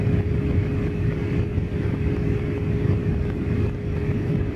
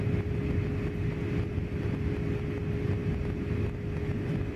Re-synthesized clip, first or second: first